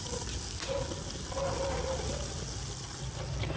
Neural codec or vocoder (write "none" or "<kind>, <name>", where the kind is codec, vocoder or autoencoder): none